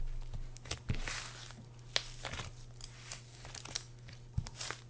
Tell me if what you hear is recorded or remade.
recorded